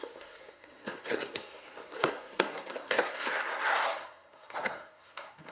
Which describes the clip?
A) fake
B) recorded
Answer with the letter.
A